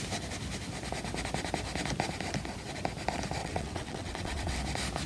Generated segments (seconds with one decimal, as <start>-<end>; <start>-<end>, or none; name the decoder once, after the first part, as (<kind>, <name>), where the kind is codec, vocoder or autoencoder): 3.4-4.6 (vocoder, WaveNeXt)

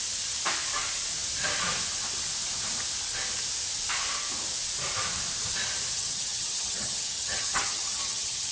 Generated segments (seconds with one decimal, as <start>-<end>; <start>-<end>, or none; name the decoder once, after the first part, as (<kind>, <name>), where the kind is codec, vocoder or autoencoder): 5.9-8.5 (vocoder, HiFi-GAN)

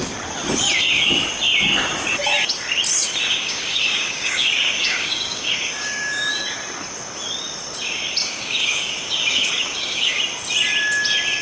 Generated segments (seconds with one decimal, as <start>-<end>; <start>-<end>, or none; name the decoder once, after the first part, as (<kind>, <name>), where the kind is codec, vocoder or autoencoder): 3.3-6.3 (codec, DAC); 8.2-10.2